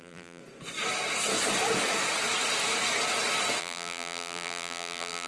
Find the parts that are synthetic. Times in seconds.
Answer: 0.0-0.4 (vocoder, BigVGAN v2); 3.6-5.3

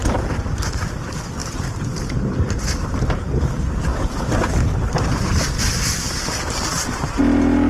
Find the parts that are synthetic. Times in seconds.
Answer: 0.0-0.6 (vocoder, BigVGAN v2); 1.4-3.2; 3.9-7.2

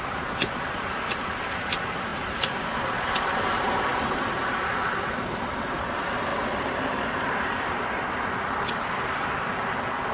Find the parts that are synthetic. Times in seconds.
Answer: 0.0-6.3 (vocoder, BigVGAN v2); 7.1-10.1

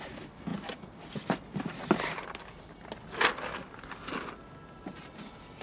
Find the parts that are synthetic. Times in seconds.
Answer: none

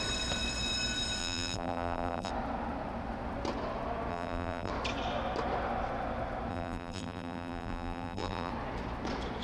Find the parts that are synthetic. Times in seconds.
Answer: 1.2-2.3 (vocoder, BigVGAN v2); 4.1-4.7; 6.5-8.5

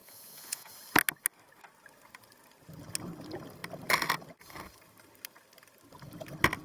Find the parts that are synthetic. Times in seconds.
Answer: 0.0-0.7 (vocoder, Vocos)

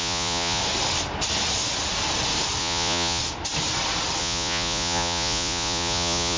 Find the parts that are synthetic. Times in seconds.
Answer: 0.0-0.6 (vocoder, Vocos); 2.6-3.2; 4.2-6.4

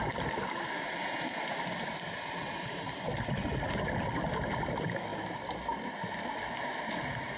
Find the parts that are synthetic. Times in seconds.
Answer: none